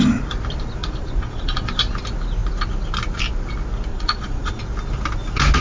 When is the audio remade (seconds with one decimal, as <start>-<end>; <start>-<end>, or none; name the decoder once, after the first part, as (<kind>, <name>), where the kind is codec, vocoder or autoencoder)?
0.8-1.8 (vocoder, Vocos); 3.9-4.6